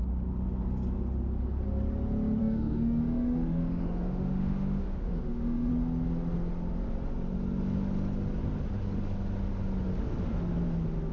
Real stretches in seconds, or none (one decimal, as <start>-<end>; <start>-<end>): 0.0-2.4; 5.7-11.1